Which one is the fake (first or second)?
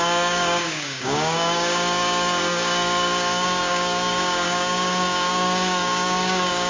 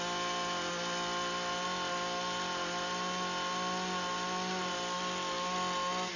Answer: first